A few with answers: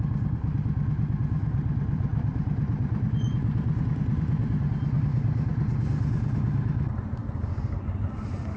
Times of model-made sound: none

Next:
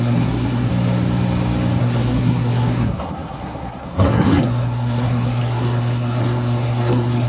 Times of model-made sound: 0.0-0.7 (codec, SNAC); 1.8-7.3

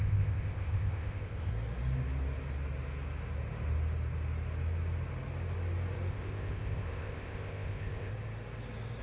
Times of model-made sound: 0.0-1.5 (codec, ZipCodec); 6.1-8.1

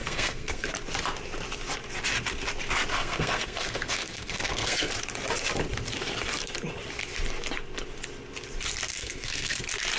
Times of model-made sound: 0.0-0.7 (codec, SNAC); 2.9-4.9; 8.9-9.6